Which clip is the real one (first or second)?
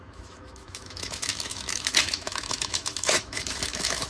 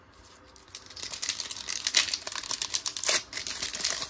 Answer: second